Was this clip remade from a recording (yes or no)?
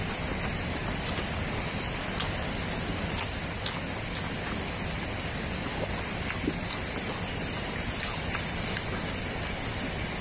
no